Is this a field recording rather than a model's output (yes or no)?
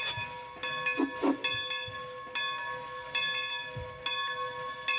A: yes